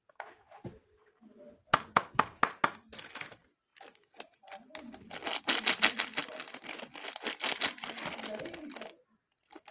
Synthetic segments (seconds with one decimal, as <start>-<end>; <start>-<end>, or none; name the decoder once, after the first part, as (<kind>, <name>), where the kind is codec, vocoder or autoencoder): none